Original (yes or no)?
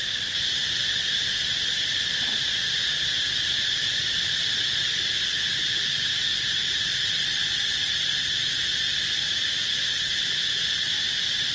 no